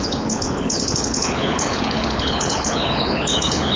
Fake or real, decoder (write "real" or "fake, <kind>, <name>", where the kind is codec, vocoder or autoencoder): fake, codec, HILCodec